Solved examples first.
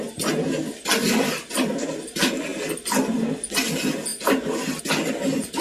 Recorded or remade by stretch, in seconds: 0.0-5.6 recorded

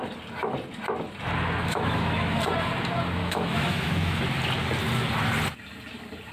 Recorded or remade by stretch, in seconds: 0.0-1.6 recorded; 1.6-2.4 remade; 2.4-3.2 recorded; 3.2-4.2 remade; 4.2-6.3 recorded

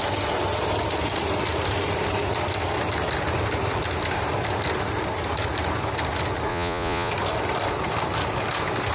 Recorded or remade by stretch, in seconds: 0.0-6.5 recorded; 6.5-7.1 remade; 7.1-8.9 recorded

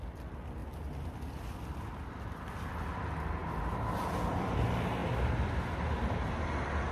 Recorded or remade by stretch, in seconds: 0.0-0.6 recorded; 0.6-2.5 remade; 2.5-5.0 recorded; 5.0-6.3 remade; 6.3-6.9 recorded

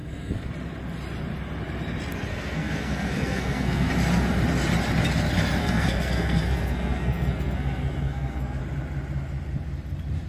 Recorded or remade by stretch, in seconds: 0.0-0.5 remade; 0.5-2.3 recorded; 2.3-3.9 remade; 3.9-5.6 recorded; 5.6-8.6 remade; 8.6-10.3 recorded

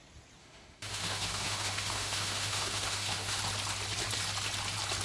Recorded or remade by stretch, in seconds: 0.0-0.4 recorded; 0.4-3.4 remade; 3.4-5.0 recorded

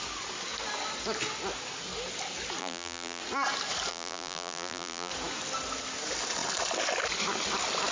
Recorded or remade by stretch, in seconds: 0.0-2.6 recorded; 2.6-3.2 remade; 3.2-3.9 recorded; 3.9-5.1 remade; 5.1-7.9 recorded

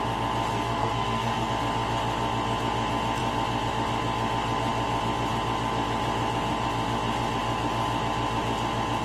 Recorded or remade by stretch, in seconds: 0.0-0.5 recorded; 0.5-1.5 remade; 1.5-9.0 recorded